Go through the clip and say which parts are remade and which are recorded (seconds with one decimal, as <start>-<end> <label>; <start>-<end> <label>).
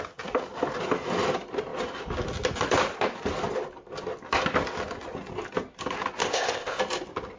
0.0-6.2 recorded; 6.2-6.8 remade; 6.8-7.4 recorded